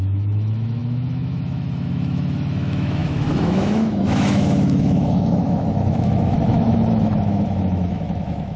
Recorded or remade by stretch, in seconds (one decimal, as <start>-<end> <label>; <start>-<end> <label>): 0.0-8.6 remade